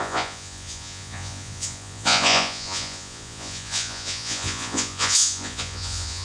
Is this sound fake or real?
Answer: fake